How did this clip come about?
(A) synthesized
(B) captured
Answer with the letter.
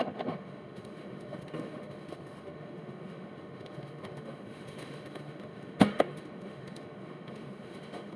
A